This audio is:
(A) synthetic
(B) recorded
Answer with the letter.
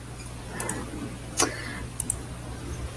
B